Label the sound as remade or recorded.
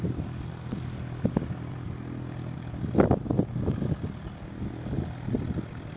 recorded